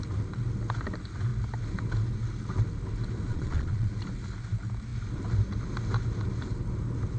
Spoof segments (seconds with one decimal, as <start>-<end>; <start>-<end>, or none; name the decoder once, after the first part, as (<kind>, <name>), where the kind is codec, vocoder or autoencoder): 3.3-3.9 (vocoder, Vocos)